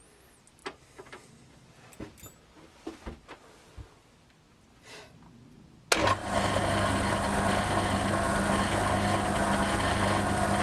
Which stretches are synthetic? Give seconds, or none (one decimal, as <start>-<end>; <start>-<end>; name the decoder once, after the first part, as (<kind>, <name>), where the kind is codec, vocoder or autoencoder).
none